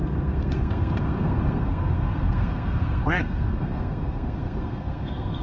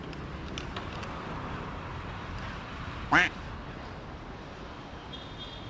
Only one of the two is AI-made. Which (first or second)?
first